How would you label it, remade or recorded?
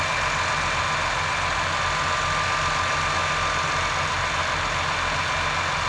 recorded